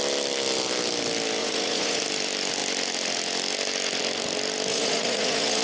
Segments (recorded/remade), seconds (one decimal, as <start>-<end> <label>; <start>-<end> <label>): 0.0-1.4 recorded; 1.4-2.0 remade; 2.0-4.7 recorded; 4.7-5.6 remade